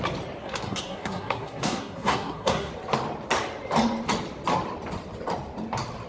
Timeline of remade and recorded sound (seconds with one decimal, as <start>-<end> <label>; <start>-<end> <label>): 0.0-0.4 recorded; 0.4-2.7 remade; 2.7-6.1 recorded